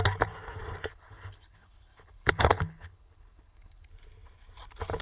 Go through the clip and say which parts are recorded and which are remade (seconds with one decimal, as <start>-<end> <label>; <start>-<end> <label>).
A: 0.0-0.9 recorded; 0.9-3.9 remade; 3.9-5.0 recorded